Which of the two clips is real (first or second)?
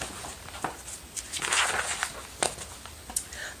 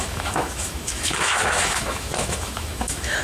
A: first